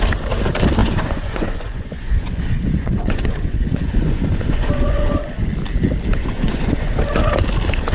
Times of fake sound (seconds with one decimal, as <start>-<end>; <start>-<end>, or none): 0.8-5.5; 6.1-7.1